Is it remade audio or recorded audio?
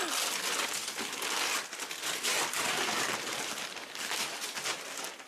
recorded